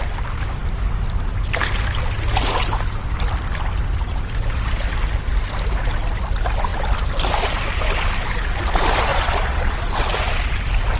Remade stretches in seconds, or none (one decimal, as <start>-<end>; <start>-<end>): 9.1-9.8